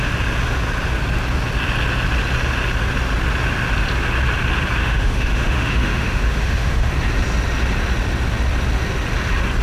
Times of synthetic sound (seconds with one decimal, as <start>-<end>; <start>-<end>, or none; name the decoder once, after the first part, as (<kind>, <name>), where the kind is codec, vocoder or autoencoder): 4.8-6.9 (autoencoder, DAC-VAE)